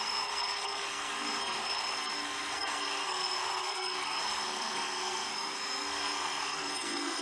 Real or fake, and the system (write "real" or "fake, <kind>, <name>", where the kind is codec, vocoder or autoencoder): fake, codec, SNAC